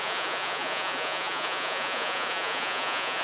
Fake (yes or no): yes